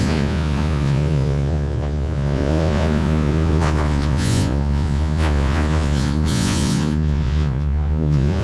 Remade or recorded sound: remade